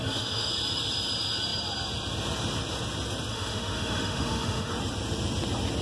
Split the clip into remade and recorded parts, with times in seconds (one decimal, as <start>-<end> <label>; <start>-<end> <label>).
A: 0.0-0.5 remade; 0.5-3.3 recorded; 3.3-4.7 remade; 4.7-5.8 recorded